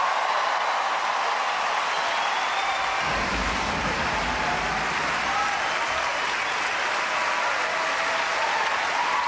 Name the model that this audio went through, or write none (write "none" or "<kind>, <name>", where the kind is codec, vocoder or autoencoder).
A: none